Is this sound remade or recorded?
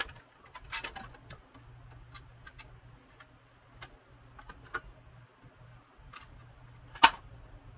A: recorded